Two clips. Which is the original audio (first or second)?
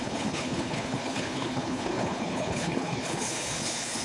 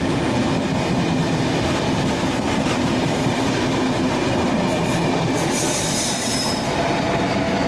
second